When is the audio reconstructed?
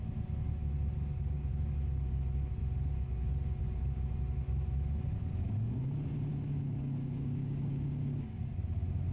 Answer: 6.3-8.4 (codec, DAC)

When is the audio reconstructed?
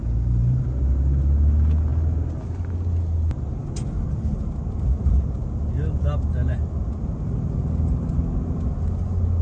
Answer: 0.0-0.6 (vocoder, BigVGAN v2)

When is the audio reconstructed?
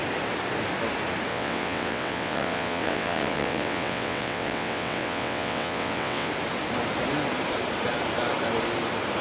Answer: 1.3-6.3 (vocoder, WaveNeXt)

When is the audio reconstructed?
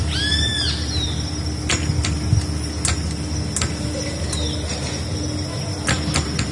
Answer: none